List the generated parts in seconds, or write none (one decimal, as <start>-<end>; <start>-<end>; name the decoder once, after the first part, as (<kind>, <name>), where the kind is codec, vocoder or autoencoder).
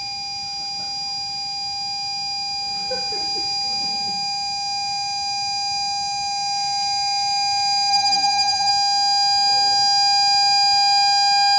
7.9-8.7 (vocoder, BigVGAN v2)